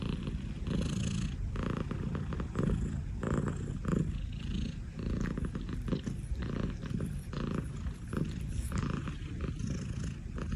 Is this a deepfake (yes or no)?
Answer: no